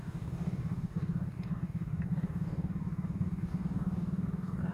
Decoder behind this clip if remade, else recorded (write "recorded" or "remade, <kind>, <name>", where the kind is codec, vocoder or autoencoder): remade, codec, DAC